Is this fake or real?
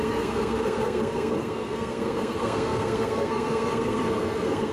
fake